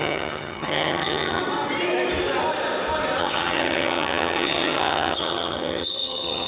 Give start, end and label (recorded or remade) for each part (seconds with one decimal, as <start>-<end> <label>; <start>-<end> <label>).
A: 0.0-1.4 remade; 1.4-3.2 recorded; 3.2-6.5 remade